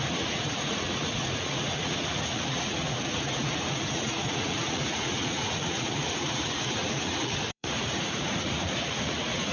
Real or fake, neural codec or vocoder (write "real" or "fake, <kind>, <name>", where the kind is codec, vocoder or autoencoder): fake, vocoder, Vocos